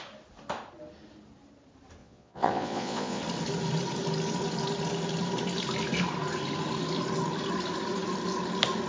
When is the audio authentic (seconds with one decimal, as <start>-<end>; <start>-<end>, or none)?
0.0-2.0; 3.2-8.9